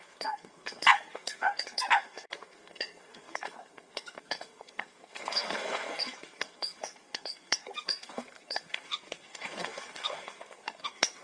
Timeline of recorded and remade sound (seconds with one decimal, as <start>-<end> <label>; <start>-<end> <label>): 0.0-11.2 remade